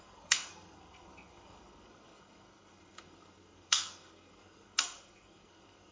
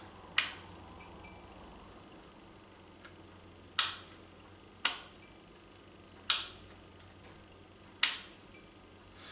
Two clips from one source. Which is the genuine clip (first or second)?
second